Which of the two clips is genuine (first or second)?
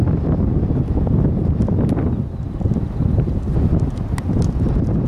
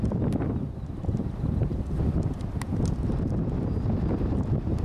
first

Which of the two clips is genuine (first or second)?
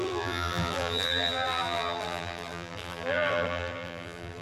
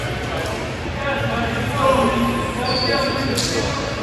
second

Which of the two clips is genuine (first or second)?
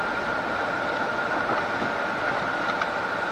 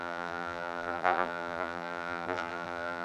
first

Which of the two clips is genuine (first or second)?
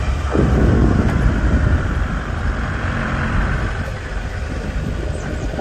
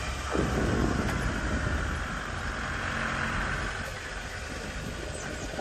second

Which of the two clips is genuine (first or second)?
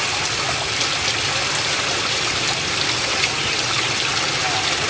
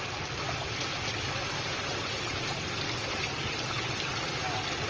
first